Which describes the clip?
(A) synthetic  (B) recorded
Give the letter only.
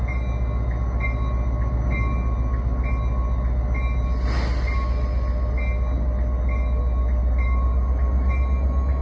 B